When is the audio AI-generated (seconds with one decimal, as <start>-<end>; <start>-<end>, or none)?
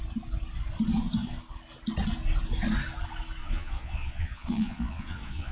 3.4-5.5